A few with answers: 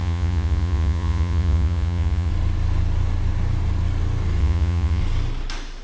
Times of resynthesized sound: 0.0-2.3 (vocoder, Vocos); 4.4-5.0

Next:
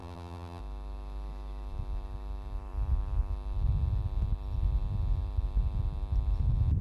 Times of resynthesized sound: 0.0-0.6 (vocoder, BigVGAN v2)

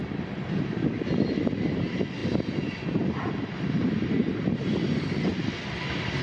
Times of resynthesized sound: 0.0-0.5 (vocoder, BigVGAN v2); 2.2-6.2

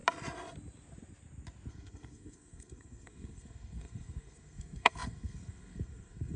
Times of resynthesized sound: 1.7-6.4 (codec, SNAC)

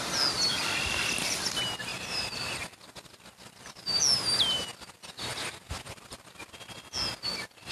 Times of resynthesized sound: none